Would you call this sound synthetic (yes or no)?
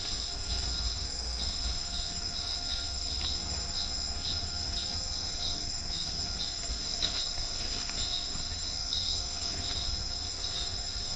yes